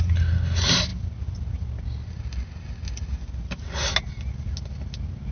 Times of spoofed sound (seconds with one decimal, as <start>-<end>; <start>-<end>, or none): none